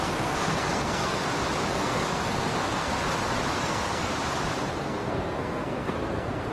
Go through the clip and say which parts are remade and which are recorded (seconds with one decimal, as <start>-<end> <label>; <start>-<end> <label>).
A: 0.0-1.2 remade; 1.2-1.7 recorded; 1.7-2.9 remade; 2.9-3.5 recorded; 3.5-4.1 remade; 4.1-4.8 recorded; 4.8-6.5 remade